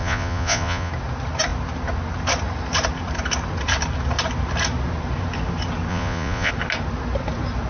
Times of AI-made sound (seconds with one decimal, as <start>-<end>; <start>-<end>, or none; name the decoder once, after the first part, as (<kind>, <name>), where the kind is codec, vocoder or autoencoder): 0.0-0.9 (vocoder, Vocos); 5.9-6.5